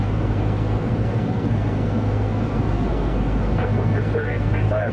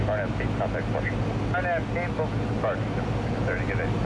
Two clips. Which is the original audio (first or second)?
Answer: second